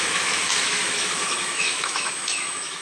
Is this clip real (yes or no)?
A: no